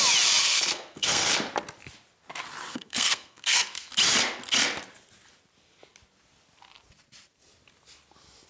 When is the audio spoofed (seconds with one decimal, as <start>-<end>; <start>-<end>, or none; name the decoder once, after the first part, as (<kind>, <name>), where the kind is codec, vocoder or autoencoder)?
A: 0.4-1.3 (codec, SNAC); 2.7-3.9